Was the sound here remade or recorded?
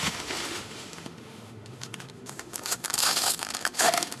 remade